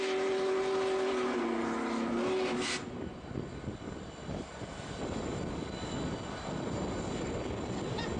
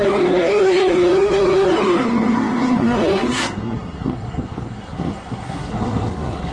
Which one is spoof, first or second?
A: second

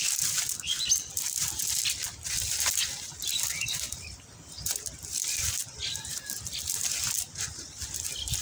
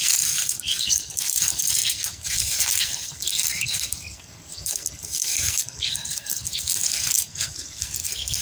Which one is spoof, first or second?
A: second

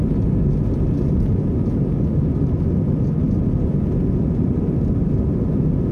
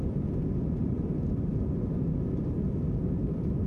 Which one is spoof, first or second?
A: second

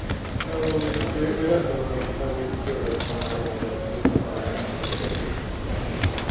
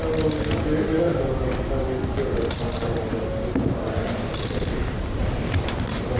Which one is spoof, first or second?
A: second